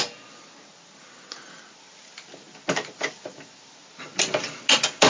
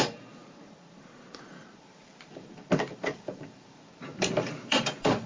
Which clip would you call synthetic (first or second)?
second